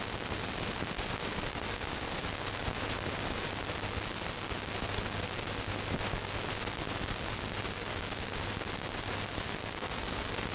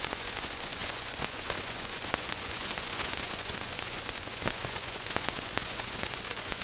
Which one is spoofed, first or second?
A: second